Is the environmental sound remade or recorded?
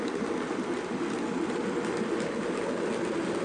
recorded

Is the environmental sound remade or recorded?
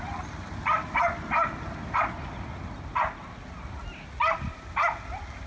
recorded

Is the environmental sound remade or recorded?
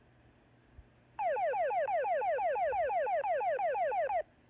recorded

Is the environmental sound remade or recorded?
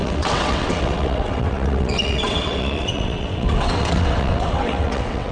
remade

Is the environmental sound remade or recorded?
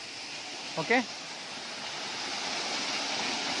recorded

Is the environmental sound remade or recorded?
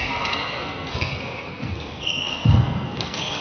remade